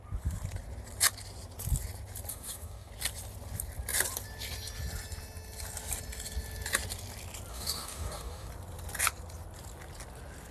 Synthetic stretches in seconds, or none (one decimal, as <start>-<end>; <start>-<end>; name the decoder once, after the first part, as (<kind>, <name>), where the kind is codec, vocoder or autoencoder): 2.3-2.9 (codec, DAC); 7.5-8.5